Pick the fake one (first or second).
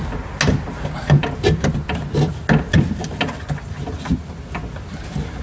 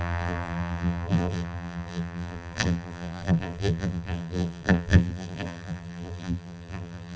second